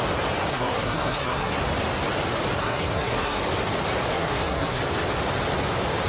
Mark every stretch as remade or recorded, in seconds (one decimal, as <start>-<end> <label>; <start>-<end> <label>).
0.0-0.5 recorded; 0.5-1.6 remade; 1.6-2.6 recorded; 2.6-3.4 remade; 3.4-4.1 recorded; 4.1-4.8 remade; 4.8-6.1 recorded